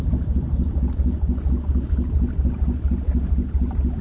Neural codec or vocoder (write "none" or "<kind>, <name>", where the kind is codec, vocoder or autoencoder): none